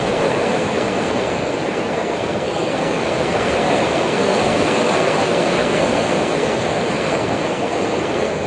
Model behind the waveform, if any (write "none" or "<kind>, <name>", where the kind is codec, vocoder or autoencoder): codec, SNAC